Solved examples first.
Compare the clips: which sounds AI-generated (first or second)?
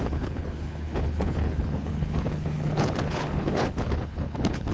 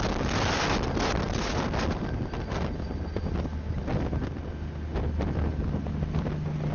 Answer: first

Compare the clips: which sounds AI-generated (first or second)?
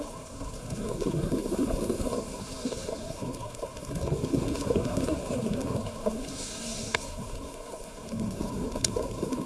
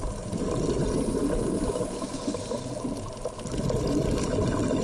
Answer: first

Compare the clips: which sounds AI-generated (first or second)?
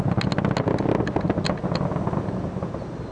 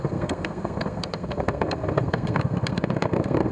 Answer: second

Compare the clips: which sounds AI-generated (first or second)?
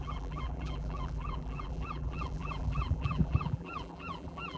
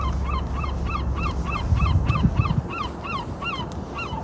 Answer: first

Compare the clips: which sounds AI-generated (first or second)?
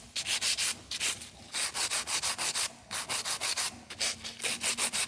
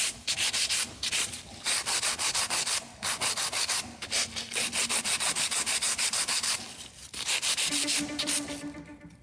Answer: second